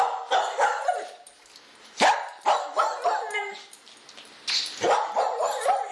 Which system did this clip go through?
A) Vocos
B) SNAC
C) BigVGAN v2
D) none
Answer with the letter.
D